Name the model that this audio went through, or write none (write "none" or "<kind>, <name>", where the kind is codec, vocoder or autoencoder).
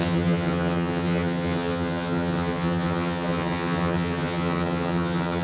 vocoder, HiFi-GAN